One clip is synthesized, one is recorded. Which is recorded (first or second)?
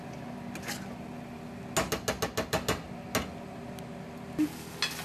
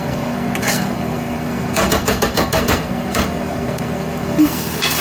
first